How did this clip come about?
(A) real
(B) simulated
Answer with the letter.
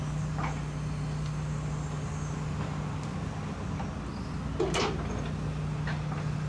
A